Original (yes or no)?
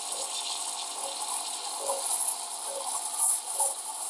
yes